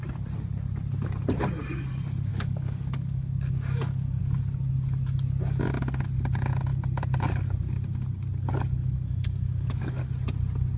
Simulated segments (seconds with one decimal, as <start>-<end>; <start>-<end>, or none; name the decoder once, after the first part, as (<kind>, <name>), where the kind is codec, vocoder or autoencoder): 2.3-4.2 (codec, DAC); 8.8-10.0